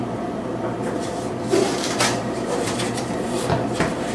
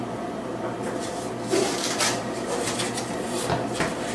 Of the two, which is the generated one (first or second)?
first